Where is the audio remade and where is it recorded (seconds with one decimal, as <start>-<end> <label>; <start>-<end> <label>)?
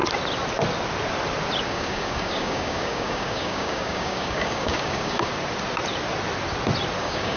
0.0-1.7 recorded; 1.7-5.3 remade; 5.3-7.0 recorded; 7.0-7.4 remade